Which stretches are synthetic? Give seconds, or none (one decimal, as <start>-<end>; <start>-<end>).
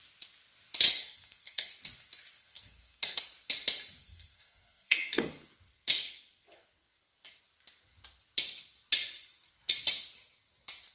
1.0-1.7; 2.4-3.2; 4.0-5.3